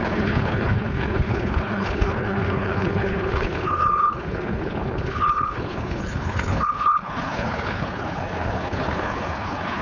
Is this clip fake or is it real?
fake